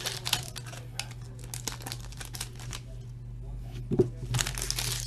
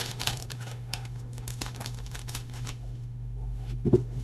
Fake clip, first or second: second